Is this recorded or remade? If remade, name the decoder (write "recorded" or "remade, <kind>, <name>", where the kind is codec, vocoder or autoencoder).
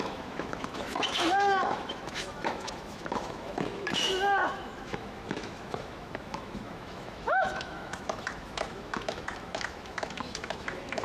remade, autoencoder, DAC-VAE